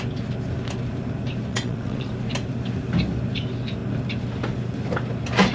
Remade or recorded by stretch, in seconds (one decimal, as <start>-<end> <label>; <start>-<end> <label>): 0.0-1.5 recorded; 1.5-2.1 remade; 2.1-5.5 recorded